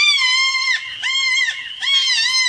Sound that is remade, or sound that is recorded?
recorded